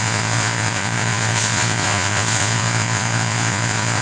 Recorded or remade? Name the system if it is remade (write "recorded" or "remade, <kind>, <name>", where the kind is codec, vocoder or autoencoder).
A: remade, vocoder, Vocos